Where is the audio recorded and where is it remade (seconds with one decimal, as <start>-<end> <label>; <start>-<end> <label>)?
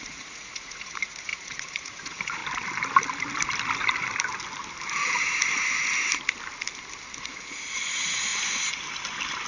0.0-2.4 remade; 2.4-7.2 recorded; 7.2-8.3 remade; 8.3-9.5 recorded